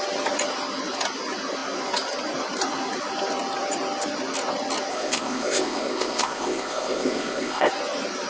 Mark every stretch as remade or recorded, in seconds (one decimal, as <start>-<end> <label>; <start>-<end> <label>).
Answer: 0.0-4.9 recorded; 4.9-7.7 remade; 7.7-8.3 recorded